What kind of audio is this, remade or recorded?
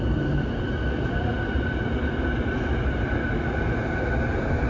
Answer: remade